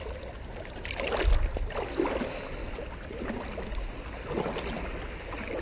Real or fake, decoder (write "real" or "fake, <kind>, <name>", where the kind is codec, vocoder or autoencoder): real